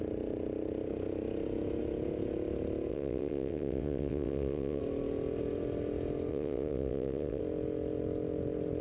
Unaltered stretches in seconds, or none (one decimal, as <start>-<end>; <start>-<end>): 0.0-2.9; 4.8-6.3; 7.4-8.8